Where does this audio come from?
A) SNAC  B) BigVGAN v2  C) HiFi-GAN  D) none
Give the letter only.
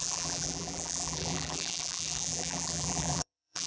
B